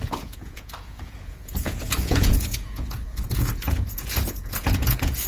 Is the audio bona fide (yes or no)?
no